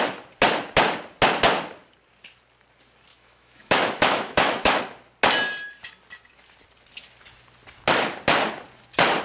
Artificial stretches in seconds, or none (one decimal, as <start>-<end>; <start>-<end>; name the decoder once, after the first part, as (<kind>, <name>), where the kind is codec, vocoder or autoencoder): 3.1-4.8 (autoencoder, DAC-VAE)